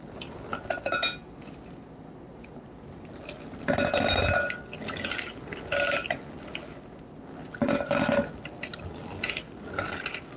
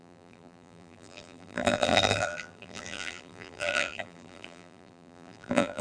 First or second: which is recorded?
first